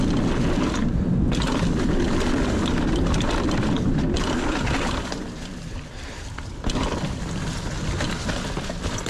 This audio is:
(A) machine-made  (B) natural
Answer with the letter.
B